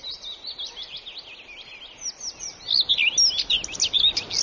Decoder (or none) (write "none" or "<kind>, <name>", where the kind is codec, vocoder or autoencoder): none